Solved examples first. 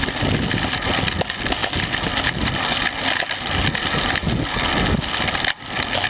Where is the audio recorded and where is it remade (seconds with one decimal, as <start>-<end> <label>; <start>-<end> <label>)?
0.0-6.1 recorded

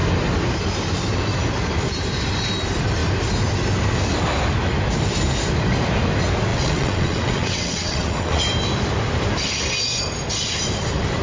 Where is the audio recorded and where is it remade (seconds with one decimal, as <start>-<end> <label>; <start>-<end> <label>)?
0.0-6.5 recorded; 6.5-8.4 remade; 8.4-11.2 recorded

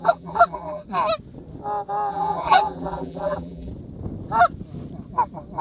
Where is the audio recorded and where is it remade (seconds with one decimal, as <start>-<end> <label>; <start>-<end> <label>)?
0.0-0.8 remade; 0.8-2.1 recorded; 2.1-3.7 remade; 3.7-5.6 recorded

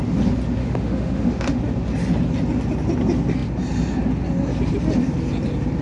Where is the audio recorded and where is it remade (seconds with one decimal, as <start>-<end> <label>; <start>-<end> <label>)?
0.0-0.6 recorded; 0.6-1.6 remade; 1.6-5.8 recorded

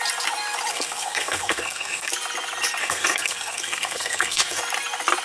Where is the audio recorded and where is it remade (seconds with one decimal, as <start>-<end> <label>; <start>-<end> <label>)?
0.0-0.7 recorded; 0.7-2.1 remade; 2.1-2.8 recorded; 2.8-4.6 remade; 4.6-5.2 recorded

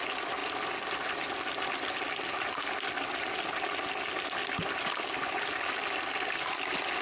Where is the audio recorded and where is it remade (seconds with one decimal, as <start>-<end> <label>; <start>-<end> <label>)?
0.0-7.0 recorded

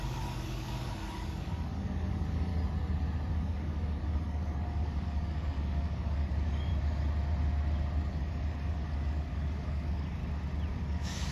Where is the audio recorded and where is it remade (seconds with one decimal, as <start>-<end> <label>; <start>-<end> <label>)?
0.0-2.5 remade; 2.5-3.3 recorded; 3.3-6.7 remade; 6.7-8.1 recorded; 8.1-10.2 remade; 10.2-10.7 recorded; 10.7-11.3 remade